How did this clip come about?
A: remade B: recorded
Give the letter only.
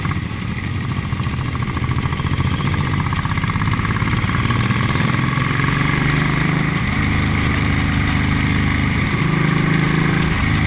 B